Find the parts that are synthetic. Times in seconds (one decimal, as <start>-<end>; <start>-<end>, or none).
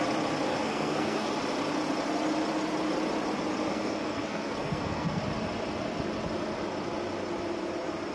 0.5-1.3; 3.7-5.2